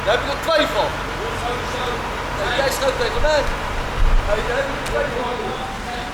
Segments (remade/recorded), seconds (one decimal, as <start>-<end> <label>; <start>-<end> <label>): 0.0-6.1 recorded

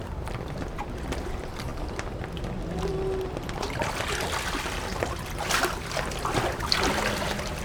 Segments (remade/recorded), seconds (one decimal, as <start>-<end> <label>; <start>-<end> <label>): 0.0-7.6 recorded

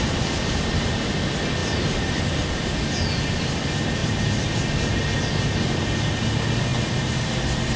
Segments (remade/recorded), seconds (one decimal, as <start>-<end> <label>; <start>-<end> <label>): 0.0-1.6 recorded; 1.6-2.2 remade; 2.2-4.0 recorded; 4.0-4.5 remade; 4.5-6.7 recorded; 6.7-7.3 remade; 7.3-7.8 recorded

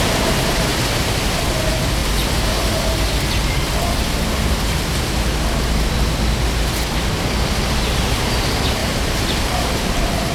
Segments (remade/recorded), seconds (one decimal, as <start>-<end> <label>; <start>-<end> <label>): 0.0-0.7 recorded; 0.7-1.4 remade; 1.4-8.8 recorded; 8.8-10.3 remade

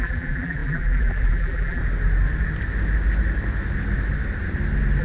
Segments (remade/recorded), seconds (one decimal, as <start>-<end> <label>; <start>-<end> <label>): 0.0-1.8 remade; 1.8-5.0 recorded